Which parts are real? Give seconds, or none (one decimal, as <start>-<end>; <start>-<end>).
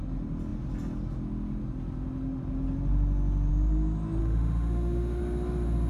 0.0-4.2; 5.2-5.9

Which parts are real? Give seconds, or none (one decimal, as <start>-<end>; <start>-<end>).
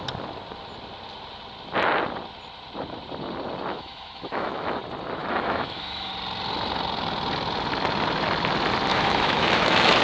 0.0-3.7; 4.8-5.2; 6.1-8.9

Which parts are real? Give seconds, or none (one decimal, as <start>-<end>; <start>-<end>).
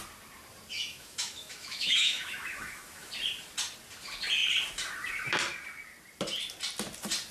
0.0-0.7; 3.1-7.3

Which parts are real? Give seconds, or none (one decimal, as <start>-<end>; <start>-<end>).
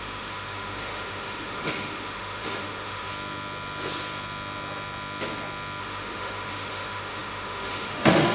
3.1-5.8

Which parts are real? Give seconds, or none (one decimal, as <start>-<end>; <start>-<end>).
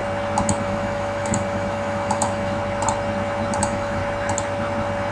0.0-0.6; 2.6-3.6; 4.0-5.1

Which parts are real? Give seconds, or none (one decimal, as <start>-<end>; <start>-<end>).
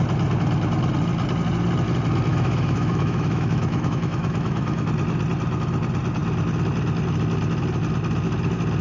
0.0-2.3; 4.9-8.8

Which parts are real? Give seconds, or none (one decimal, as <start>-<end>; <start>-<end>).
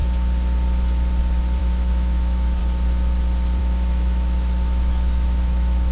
0.0-1.6; 2.6-3.6